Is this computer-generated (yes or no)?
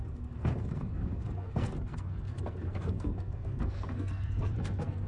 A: yes